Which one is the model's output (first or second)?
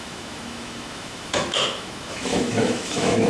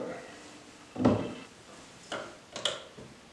first